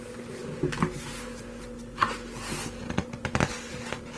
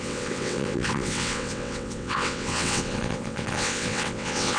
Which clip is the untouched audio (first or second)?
first